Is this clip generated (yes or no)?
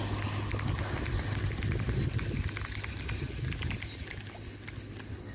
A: no